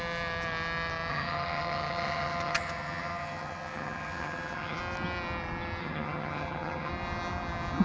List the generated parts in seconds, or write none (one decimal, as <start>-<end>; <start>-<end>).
1.1-4.8; 5.8-6.9